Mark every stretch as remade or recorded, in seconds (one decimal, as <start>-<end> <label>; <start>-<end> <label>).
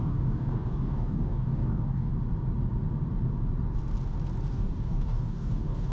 0.0-2.1 remade; 2.1-4.5 recorded; 4.5-5.9 remade